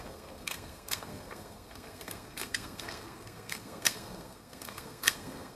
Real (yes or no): no